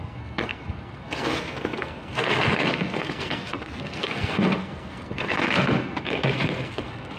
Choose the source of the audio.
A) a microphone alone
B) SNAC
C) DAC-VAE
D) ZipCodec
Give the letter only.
B